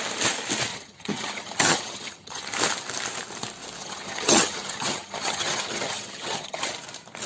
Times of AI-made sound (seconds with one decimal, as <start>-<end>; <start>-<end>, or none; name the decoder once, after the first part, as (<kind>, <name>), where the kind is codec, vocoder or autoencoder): 0.7-2.4 (vocoder, HiFi-GAN); 3.8-6.7